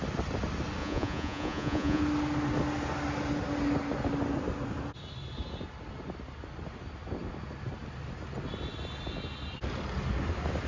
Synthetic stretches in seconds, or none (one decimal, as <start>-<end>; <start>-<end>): 0.8-2.0